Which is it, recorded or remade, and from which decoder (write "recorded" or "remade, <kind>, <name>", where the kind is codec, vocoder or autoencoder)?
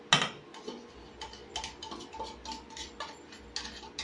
recorded